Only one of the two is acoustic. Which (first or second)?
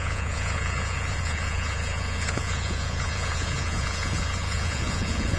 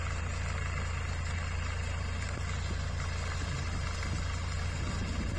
second